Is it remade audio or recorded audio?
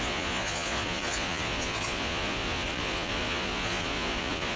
remade